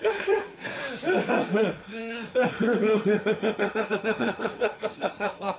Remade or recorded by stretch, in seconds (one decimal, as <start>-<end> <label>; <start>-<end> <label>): 0.0-0.8 remade; 0.8-1.3 recorded; 1.3-5.6 remade